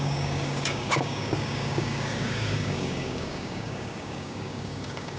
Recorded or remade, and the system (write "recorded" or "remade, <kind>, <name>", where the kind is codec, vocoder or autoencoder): remade, codec, DAC